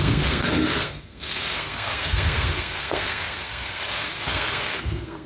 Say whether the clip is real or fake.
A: fake